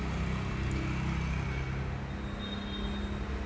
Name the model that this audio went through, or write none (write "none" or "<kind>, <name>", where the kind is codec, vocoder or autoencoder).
none